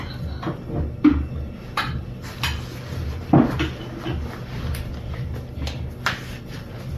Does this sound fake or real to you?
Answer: real